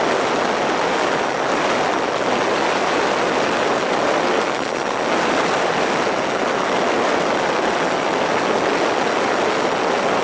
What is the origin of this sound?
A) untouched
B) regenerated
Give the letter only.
A